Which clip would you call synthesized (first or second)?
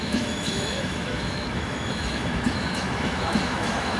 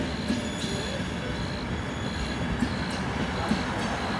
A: first